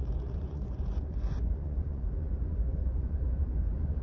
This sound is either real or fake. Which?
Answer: fake